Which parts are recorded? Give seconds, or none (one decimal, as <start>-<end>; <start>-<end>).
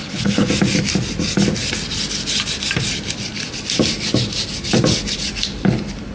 0.5-6.1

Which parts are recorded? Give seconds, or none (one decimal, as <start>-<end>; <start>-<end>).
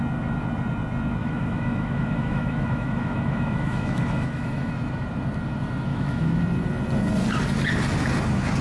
0.0-1.2; 4.7-5.9; 6.4-8.6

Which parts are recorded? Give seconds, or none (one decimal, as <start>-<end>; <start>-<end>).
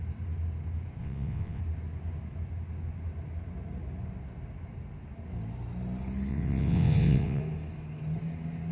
0.0-1.0; 1.6-6.3; 7.4-8.7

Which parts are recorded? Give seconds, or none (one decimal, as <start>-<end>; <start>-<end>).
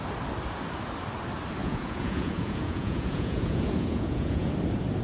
0.0-1.6; 4.5-5.0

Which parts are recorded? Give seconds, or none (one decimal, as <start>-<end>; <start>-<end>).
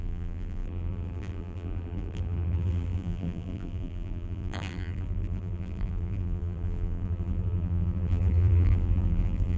none